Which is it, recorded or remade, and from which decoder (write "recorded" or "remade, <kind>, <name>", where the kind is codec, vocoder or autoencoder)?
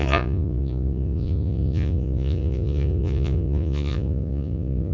remade, vocoder, Vocos